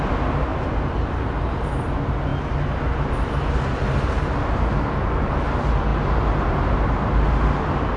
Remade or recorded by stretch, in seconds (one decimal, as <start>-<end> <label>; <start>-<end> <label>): 0.0-8.0 recorded